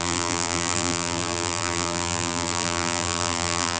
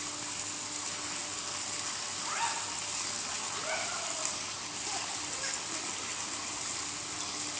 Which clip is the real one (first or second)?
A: second